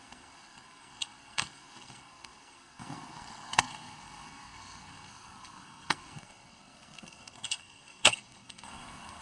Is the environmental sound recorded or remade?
remade